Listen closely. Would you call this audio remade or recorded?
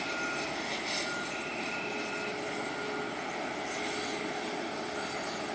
recorded